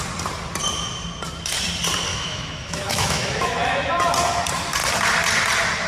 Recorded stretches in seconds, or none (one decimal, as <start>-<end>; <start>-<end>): 0.0-2.1; 3.9-5.9